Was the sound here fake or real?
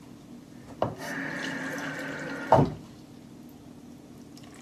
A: real